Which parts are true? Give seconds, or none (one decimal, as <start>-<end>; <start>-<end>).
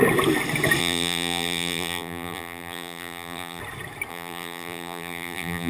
0.0-0.8; 3.6-4.1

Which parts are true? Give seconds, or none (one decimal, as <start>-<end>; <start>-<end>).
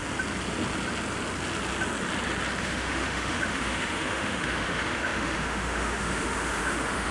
0.0-2.6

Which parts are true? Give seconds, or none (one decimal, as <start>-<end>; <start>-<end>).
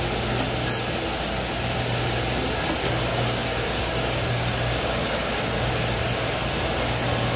0.0-3.1; 6.0-7.4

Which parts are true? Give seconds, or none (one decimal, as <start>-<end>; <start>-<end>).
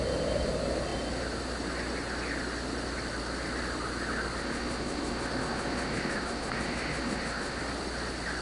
0.0-4.4; 7.6-8.4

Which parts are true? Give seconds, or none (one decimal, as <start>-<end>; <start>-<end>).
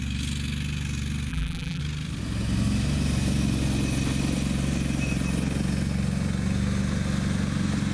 0.0-1.3; 1.8-7.9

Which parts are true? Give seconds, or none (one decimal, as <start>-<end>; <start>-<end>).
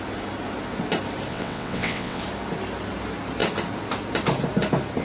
0.0-1.3; 2.2-5.0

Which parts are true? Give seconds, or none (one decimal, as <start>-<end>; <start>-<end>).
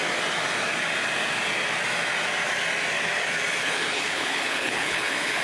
0.0-3.6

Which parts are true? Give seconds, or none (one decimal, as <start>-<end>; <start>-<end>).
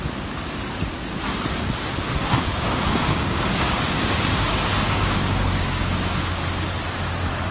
0.0-2.2; 6.4-7.5